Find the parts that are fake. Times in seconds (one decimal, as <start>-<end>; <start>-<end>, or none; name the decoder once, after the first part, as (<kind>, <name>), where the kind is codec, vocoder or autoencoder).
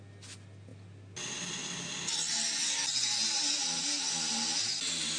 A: none